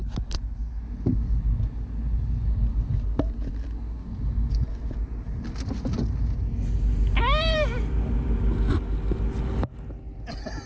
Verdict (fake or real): real